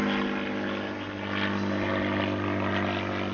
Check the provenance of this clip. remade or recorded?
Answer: recorded